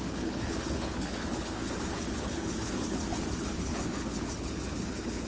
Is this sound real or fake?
fake